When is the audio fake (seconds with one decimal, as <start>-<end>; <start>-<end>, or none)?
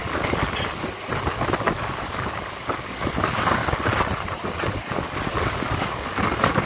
1.3-3.6; 5.4-6.7